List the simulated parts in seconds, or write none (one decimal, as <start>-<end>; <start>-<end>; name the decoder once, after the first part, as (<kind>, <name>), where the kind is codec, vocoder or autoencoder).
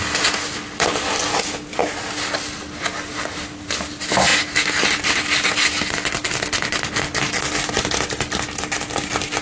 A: none